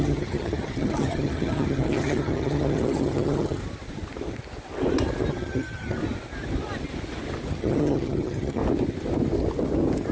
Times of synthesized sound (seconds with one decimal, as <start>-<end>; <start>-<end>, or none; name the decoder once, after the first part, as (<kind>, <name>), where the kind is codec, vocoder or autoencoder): 0.0-3.6 (vocoder, HiFi-GAN); 5.3-6.0; 7.5-8.6